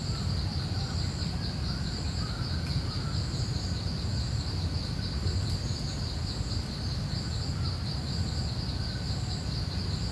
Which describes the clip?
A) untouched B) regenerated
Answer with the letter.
A